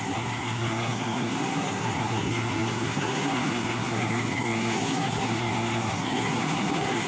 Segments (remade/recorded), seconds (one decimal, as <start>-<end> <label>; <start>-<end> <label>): 0.0-7.1 remade